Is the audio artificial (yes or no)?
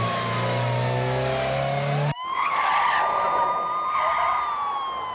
no